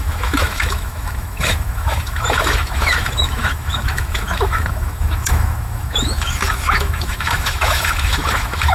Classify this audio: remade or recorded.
remade